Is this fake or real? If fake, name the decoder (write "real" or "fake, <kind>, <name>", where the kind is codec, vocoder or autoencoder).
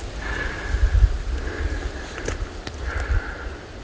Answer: real